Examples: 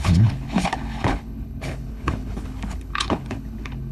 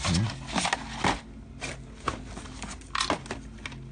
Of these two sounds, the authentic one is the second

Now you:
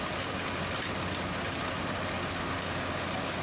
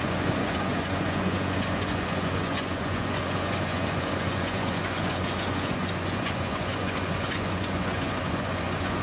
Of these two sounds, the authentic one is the first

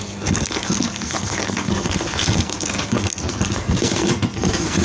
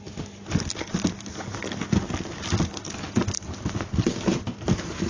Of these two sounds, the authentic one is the second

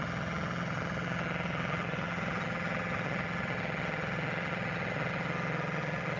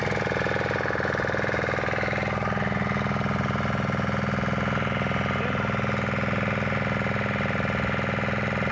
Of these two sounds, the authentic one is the second